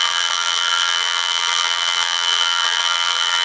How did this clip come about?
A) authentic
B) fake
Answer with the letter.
B